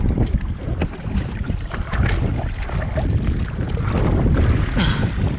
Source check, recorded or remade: recorded